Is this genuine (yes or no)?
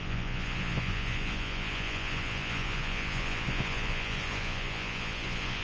no